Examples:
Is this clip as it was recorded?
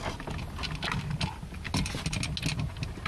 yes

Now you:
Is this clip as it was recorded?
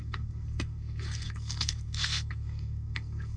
no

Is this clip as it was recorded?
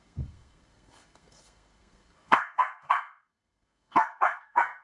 no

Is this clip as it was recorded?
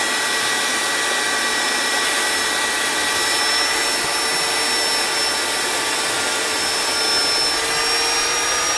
yes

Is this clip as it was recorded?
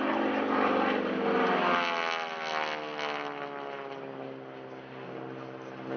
yes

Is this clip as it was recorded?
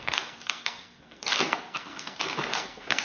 no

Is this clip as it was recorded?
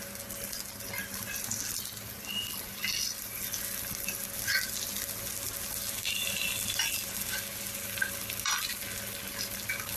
yes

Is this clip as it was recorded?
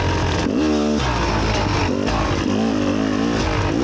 yes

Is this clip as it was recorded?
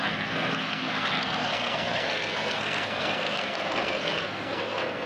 no